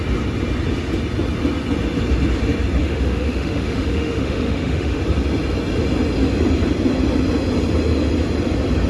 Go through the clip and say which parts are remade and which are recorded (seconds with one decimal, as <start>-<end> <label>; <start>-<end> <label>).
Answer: 0.0-2.8 recorded; 2.8-5.0 remade; 5.0-8.9 recorded